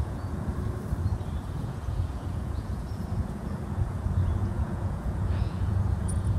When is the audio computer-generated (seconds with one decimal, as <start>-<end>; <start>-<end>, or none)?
0.0-0.5; 1.4-6.4